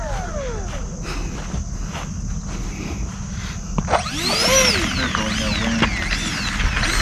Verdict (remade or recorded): recorded